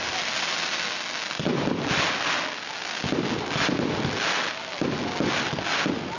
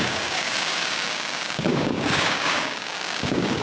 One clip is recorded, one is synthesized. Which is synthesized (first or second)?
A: second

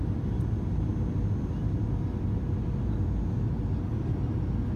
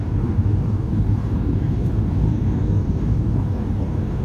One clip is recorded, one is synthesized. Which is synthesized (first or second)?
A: second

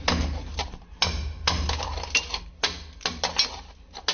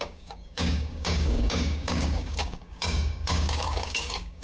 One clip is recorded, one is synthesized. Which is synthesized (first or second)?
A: second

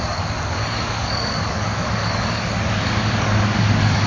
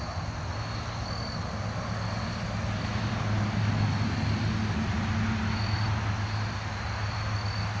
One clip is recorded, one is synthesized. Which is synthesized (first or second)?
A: first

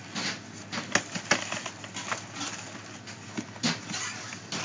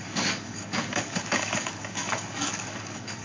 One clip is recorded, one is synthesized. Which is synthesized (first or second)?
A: second